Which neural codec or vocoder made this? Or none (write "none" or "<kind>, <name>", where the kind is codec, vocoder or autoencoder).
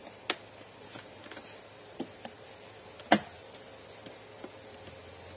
none